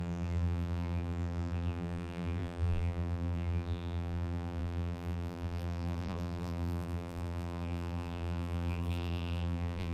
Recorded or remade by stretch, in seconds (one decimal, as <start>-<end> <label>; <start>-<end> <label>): 0.0-9.9 remade

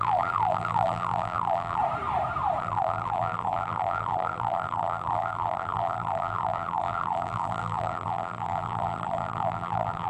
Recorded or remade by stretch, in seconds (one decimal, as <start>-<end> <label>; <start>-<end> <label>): 0.0-1.8 remade; 1.8-2.6 recorded; 2.6-10.1 remade

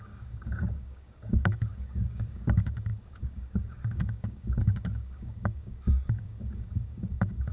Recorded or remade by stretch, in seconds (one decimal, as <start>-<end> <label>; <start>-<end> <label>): 0.0-7.5 remade